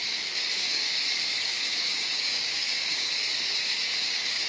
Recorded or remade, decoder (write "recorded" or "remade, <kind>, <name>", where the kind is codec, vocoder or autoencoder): remade, codec, DAC